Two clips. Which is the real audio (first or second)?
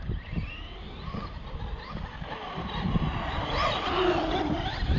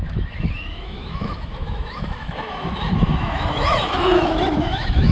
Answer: first